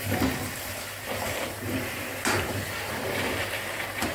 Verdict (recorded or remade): remade